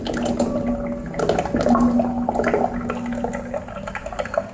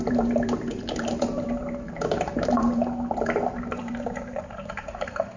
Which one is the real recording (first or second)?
first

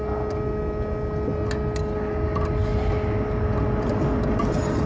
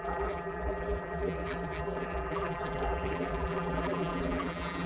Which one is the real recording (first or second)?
first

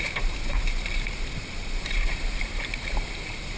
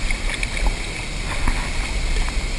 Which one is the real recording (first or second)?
second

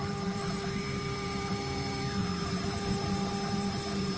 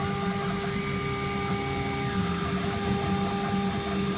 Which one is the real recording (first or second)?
second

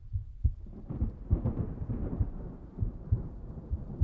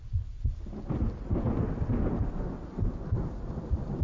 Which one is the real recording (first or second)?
second